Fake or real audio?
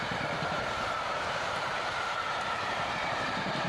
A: fake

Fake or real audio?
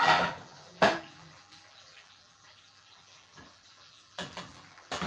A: fake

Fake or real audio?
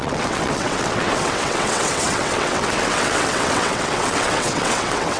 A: fake